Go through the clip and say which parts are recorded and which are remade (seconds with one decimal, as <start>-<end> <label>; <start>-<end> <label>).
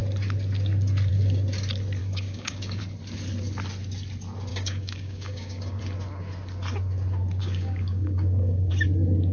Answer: 0.0-2.0 recorded; 2.0-2.8 remade; 2.8-4.5 recorded; 4.5-5.8 remade; 5.8-7.4 recorded; 7.4-8.7 remade; 8.7-9.3 recorded